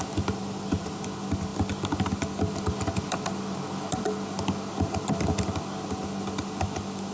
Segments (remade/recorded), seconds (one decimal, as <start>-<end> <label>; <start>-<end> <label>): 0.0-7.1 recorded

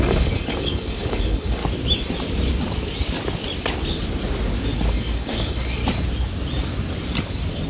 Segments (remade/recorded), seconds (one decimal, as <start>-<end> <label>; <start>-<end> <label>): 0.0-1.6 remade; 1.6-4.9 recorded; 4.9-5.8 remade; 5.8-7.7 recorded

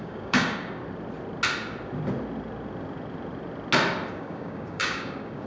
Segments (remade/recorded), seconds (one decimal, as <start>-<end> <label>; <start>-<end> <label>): 0.0-0.8 remade; 0.8-4.1 recorded; 4.1-5.5 remade

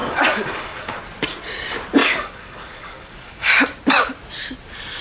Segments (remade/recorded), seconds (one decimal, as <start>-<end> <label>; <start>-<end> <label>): 0.0-1.0 remade; 1.0-2.0 recorded; 2.0-3.5 remade; 3.5-5.0 recorded

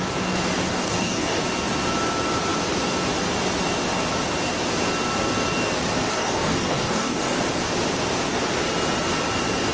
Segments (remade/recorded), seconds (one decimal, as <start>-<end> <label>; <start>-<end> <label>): 0.0-0.7 recorded; 0.7-1.4 remade; 1.4-6.1 recorded; 6.1-7.4 remade; 7.4-9.7 recorded